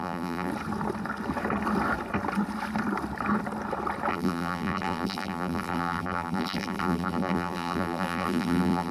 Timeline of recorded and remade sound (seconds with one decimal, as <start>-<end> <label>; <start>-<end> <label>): 0.0-0.5 remade; 0.5-4.1 recorded; 4.1-8.9 remade